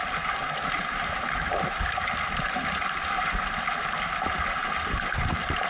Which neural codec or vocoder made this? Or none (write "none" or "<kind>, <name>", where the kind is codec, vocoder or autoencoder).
none